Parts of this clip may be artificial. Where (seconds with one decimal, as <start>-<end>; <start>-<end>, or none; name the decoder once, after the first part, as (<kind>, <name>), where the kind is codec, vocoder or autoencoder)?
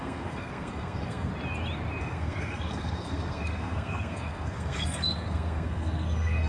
0.0-1.3 (codec, SNAC); 2.0-6.5